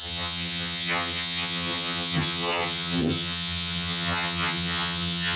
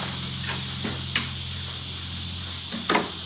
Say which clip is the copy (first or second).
first